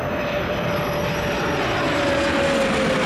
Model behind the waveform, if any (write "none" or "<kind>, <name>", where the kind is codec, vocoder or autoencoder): none